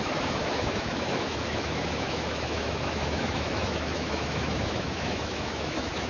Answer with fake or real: fake